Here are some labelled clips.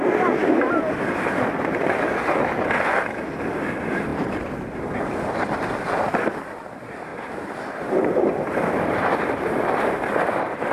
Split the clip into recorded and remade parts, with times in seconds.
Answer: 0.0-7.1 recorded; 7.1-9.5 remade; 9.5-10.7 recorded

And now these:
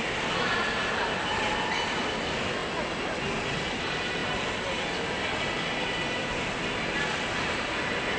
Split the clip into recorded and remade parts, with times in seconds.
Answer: 0.0-8.2 recorded

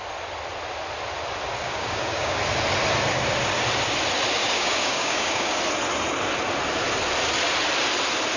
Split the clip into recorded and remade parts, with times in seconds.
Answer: 0.0-1.6 recorded; 1.6-2.4 remade; 2.4-4.4 recorded; 4.4-5.6 remade; 5.6-8.4 recorded

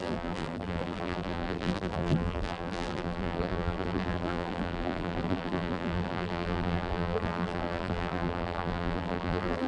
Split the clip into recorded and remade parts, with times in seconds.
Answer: 0.0-9.7 remade

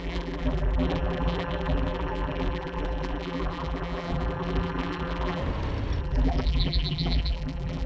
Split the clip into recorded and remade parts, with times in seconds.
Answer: 0.0-5.4 remade; 5.4-6.0 recorded; 6.0-7.9 remade

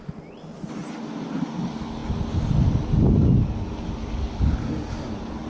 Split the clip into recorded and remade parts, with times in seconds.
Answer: 0.0-5.5 recorded

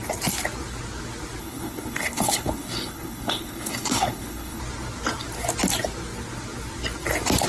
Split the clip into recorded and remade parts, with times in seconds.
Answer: 0.0-1.4 recorded; 1.4-4.6 remade; 4.6-7.5 recorded

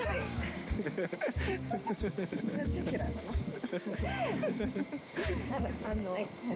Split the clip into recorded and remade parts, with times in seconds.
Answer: 0.0-6.6 remade